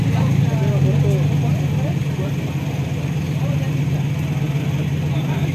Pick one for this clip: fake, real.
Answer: real